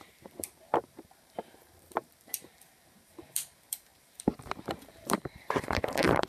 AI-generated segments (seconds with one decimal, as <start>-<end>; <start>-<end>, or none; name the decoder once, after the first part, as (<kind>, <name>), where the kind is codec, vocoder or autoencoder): 0.0-6.3 (vocoder, BigVGAN v2)

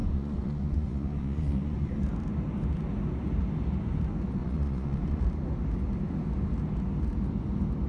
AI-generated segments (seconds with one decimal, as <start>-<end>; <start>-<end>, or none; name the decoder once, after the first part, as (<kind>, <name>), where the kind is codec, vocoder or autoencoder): 0.0-2.0 (vocoder, Vocos); 4.4-5.2